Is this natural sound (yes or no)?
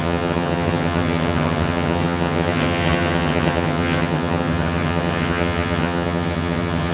no